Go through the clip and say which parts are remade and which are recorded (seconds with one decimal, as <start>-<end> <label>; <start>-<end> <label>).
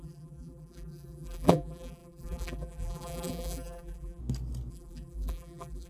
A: 0.0-4.2 remade; 4.2-4.7 recorded; 4.7-5.9 remade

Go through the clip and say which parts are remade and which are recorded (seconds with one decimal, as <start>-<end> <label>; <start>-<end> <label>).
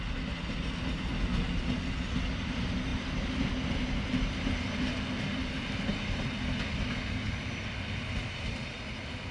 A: 0.0-9.3 recorded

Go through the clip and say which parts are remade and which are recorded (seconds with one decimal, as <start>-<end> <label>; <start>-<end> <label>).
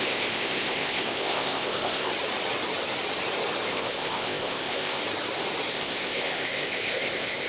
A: 0.0-2.1 remade; 2.1-3.7 recorded; 3.7-5.0 remade; 5.0-5.7 recorded; 5.7-7.5 remade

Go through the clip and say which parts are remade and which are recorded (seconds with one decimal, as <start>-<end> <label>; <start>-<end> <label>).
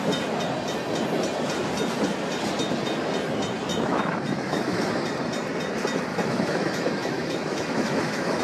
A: 0.0-3.7 recorded; 3.7-4.9 remade; 4.9-6.1 recorded; 6.1-8.4 remade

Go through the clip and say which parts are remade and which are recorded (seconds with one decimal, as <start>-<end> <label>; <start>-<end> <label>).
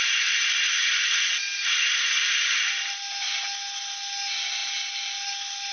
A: 0.0-5.7 recorded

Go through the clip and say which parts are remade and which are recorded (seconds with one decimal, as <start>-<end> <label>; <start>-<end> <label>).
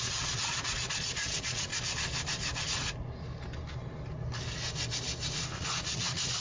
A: 0.0-1.7 remade; 1.7-5.5 recorded; 5.5-6.4 remade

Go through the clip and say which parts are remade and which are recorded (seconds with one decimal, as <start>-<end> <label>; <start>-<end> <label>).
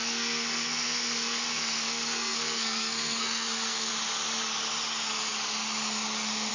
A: 0.0-3.9 remade; 3.9-6.5 recorded